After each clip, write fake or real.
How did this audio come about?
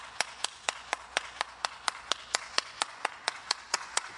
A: fake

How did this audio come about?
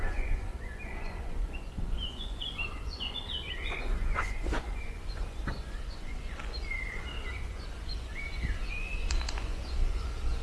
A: fake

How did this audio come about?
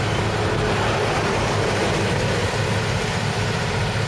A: real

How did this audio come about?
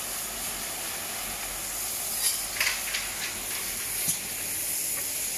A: real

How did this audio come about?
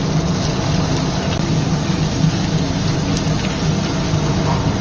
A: real